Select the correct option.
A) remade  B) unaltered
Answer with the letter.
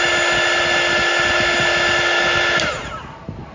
B